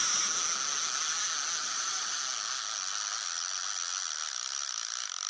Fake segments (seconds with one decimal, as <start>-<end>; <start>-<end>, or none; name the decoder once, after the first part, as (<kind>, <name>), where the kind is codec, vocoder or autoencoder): 1.6-2.2 (vocoder, BigVGAN v2)